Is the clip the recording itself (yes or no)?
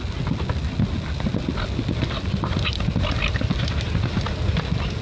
yes